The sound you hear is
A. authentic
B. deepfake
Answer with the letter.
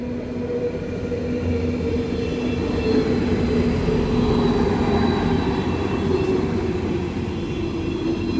A